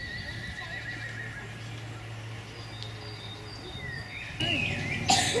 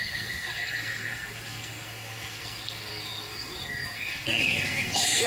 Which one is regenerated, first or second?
second